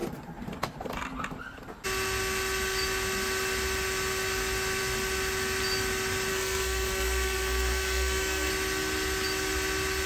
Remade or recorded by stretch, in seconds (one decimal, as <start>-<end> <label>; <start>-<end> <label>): 0.0-6.3 recorded; 6.3-8.5 remade; 8.5-10.1 recorded